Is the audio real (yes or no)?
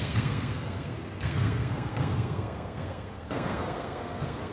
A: no